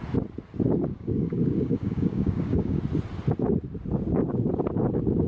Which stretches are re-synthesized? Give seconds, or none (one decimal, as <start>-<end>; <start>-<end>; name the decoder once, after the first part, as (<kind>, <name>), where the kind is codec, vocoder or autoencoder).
0.9-2.8 (codec, DAC)